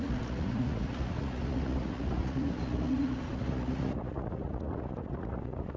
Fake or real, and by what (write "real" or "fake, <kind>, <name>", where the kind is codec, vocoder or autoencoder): fake, vocoder, Vocos